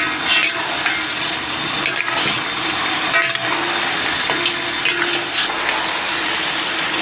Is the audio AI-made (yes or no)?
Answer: no